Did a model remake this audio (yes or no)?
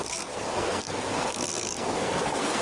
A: yes